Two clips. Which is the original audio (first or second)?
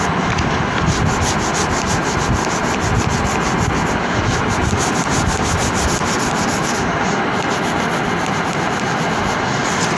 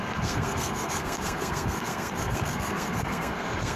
first